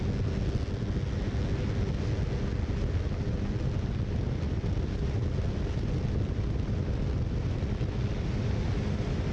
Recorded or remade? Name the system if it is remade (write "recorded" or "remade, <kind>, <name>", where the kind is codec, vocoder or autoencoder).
recorded